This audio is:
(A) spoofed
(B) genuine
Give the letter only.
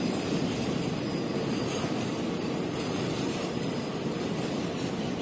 B